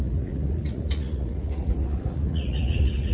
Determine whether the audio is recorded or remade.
remade